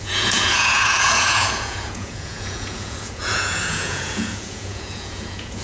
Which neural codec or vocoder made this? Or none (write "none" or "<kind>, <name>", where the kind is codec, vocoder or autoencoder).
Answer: vocoder, Vocos